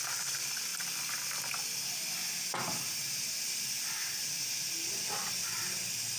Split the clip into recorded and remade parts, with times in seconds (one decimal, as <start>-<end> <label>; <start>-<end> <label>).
0.0-6.2 recorded